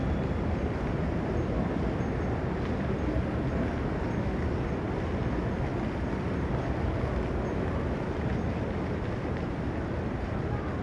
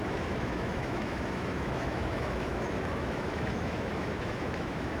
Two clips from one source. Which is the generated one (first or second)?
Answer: second